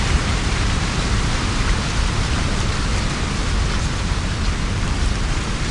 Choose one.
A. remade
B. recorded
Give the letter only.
A